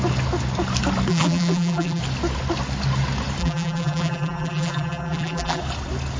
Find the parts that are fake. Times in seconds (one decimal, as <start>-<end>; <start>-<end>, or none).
1.1-2.0; 3.4-5.6